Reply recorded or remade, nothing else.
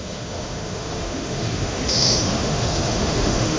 remade